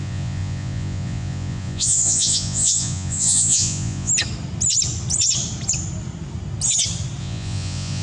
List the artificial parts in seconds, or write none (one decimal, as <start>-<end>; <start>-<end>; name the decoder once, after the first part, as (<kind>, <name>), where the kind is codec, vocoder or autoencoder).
0.0-4.1 (vocoder, Vocos); 7.2-8.0